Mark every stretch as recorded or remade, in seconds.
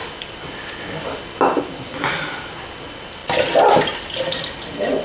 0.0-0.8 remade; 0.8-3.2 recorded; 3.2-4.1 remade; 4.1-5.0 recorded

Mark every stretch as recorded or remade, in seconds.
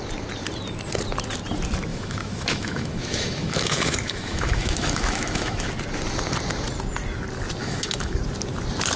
0.0-1.9 recorded; 1.9-5.7 remade; 5.7-7.6 recorded; 7.6-8.2 remade; 8.2-9.0 recorded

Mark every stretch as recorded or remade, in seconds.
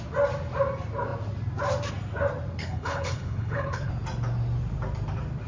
0.0-2.6 recorded; 2.6-3.9 remade; 3.9-5.5 recorded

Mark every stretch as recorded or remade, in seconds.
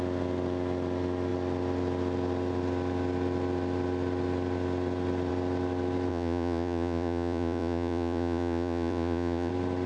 0.0-6.1 recorded; 6.1-9.5 remade; 9.5-9.9 recorded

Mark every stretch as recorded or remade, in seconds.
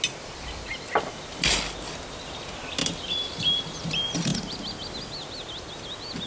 0.0-6.3 recorded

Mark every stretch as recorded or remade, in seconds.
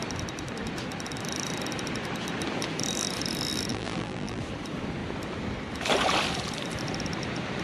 0.0-3.7 recorded; 3.7-4.4 remade; 4.4-7.6 recorded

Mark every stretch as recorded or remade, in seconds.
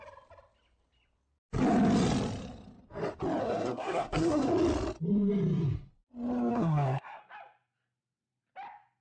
0.0-3.4 recorded; 3.4-4.5 remade; 4.5-6.5 recorded; 6.5-7.2 remade; 7.2-9.0 recorded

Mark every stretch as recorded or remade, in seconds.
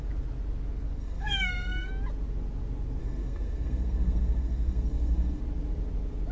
0.0-1.0 recorded; 1.0-1.9 remade; 1.9-3.0 recorded; 3.0-5.4 remade; 5.4-6.3 recorded